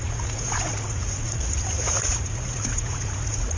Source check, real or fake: fake